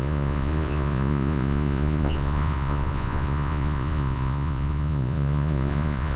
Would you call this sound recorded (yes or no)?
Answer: no